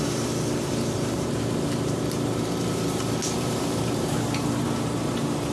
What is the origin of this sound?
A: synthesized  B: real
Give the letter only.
A